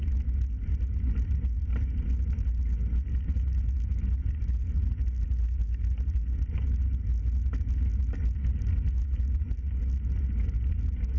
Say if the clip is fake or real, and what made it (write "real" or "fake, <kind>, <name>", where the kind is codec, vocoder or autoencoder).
real